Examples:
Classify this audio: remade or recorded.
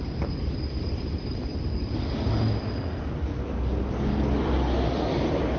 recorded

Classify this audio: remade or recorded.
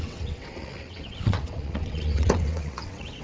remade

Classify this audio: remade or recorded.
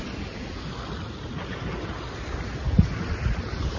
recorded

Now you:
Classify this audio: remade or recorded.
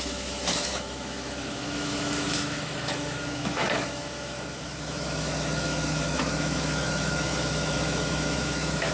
remade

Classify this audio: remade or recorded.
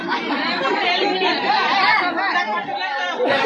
remade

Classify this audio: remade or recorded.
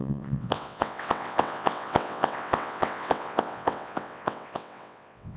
remade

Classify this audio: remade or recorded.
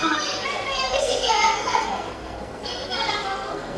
remade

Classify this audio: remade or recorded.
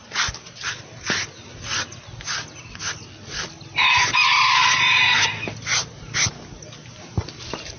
recorded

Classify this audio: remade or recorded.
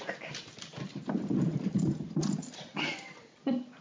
recorded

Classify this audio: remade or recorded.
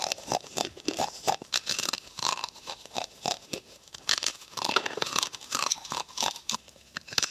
remade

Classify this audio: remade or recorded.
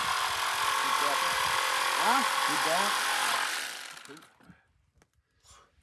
recorded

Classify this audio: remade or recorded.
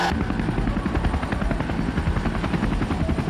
recorded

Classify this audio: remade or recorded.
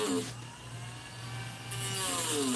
recorded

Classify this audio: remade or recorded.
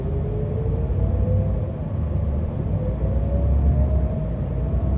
recorded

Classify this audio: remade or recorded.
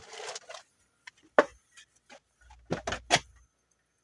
recorded